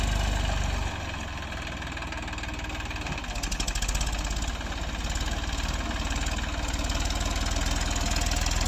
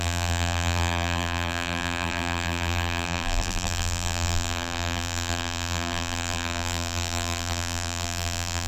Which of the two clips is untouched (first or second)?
first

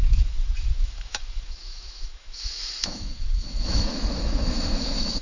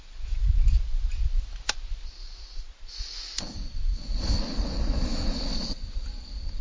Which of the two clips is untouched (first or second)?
second